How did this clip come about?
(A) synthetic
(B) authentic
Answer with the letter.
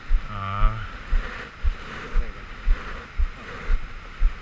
B